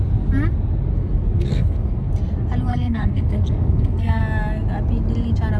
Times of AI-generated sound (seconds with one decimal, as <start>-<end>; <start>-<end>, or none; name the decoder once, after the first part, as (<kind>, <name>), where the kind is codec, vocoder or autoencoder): 0.9-2.1 (codec, SNAC); 2.7-4.2